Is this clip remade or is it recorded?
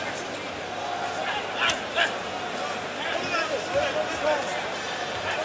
recorded